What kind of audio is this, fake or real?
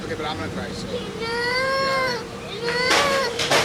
fake